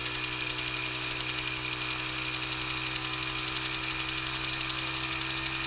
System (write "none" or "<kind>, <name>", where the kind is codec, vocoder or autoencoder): none